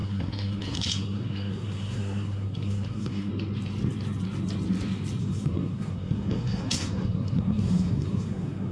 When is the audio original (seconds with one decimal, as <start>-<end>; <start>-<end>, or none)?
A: 3.3-5.2